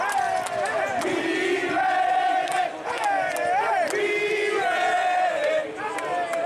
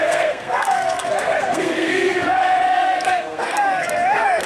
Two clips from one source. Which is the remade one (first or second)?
second